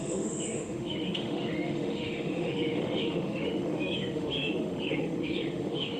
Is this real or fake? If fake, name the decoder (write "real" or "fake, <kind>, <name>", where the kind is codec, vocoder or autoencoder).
fake, autoencoder, DAC-VAE